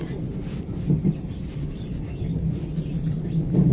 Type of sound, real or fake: real